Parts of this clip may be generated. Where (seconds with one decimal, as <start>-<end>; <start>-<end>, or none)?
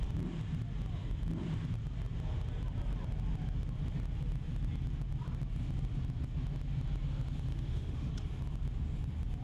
7.5-8.1